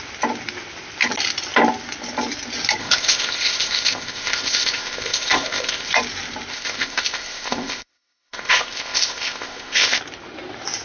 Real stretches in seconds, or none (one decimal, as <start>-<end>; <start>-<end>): 0.0-2.8; 5.9-6.5; 10.0-10.8